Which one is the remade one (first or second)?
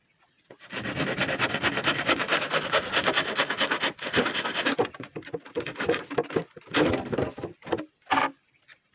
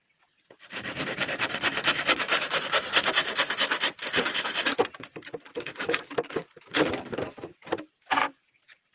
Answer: second